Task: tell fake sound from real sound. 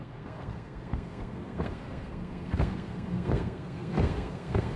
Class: fake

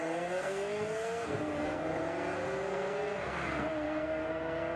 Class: fake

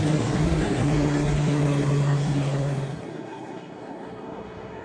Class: fake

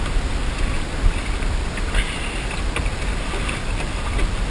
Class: real